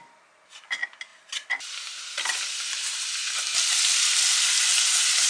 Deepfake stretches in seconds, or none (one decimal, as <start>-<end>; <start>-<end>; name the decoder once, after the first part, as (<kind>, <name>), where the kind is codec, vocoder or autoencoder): none